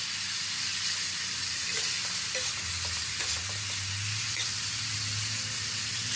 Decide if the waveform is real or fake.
real